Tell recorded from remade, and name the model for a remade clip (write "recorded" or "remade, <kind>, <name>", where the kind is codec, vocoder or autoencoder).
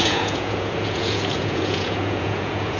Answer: remade, vocoder, Vocos